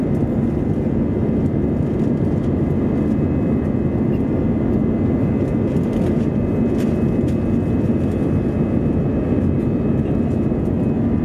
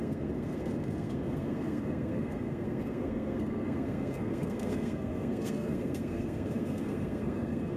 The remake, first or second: second